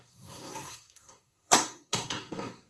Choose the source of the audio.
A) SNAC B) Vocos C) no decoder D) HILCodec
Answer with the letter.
A